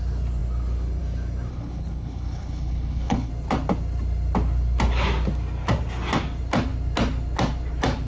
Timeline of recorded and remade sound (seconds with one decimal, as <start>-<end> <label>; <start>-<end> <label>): 0.0-1.5 recorded; 1.5-3.3 remade; 3.3-8.1 recorded